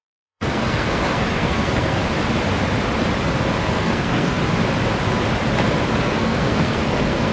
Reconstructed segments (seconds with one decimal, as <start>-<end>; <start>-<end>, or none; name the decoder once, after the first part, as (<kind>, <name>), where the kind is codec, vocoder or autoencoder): 0.0-2.0 (codec, SNAC); 3.6-4.4; 6.0-7.3